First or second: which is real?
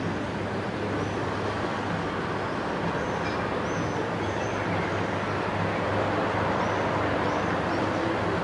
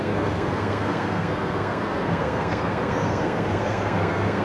first